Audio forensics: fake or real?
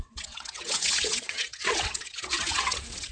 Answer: fake